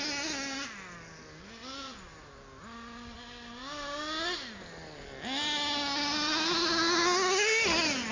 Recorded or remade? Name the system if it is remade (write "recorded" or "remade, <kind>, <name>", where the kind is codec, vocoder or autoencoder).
recorded